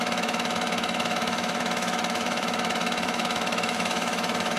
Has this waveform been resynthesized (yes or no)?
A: yes